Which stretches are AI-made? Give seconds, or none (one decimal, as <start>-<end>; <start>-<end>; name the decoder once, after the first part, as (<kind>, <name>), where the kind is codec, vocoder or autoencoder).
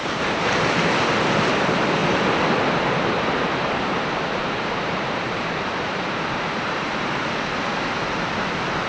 0.0-0.6 (vocoder, BigVGAN v2); 2.0-7.2